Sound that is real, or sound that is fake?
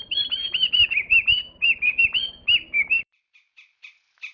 fake